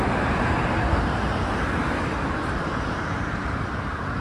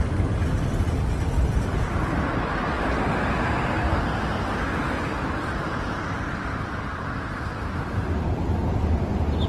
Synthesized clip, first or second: first